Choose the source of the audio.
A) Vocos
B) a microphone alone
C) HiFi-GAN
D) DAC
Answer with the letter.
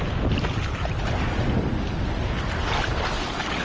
B